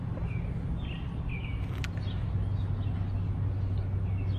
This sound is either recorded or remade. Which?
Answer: recorded